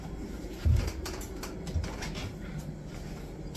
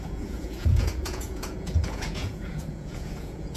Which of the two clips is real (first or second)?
first